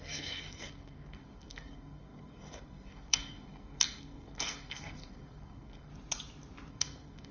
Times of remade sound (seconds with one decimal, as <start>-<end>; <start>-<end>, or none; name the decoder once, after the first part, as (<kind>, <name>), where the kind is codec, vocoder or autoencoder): 0.0-5.9 (codec, SNAC); 6.7-7.3